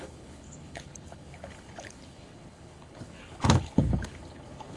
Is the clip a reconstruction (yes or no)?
yes